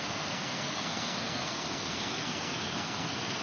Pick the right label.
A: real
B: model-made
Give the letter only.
B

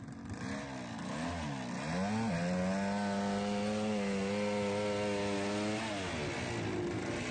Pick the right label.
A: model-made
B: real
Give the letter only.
B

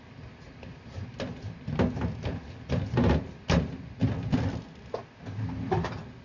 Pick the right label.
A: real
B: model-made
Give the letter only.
A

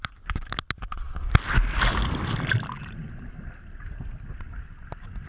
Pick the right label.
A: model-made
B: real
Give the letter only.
B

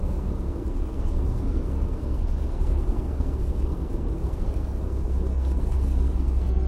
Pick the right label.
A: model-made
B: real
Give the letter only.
A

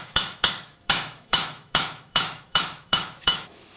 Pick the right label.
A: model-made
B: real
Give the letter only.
A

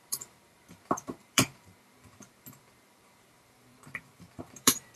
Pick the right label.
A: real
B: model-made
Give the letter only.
B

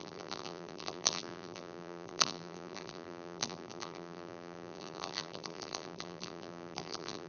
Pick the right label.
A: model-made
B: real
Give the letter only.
A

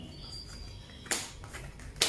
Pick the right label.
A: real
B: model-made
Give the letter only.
A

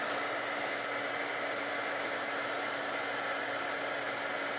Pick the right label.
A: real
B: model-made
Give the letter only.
A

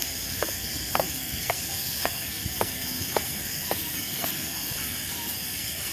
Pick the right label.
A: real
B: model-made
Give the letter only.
B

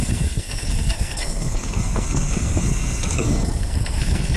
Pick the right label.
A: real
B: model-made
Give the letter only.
B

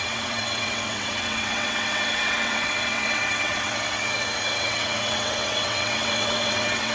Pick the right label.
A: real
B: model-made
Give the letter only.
B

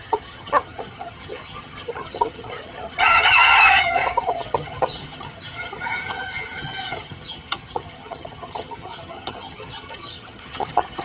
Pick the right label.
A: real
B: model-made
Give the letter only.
B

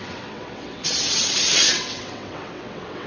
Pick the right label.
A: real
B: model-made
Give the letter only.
B